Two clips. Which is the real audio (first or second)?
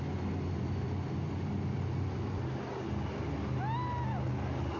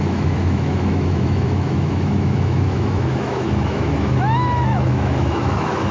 first